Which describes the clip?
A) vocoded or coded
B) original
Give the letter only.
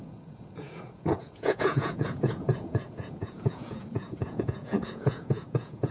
A